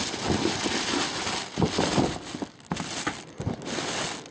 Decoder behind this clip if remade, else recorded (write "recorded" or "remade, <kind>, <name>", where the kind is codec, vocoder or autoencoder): recorded